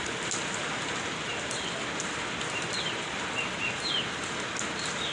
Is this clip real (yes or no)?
yes